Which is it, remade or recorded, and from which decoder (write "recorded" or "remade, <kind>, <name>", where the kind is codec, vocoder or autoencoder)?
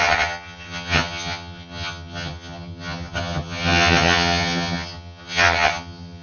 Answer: remade, vocoder, HiFi-GAN